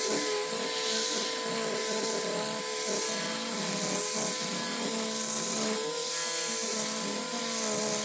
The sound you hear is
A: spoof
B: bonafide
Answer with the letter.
B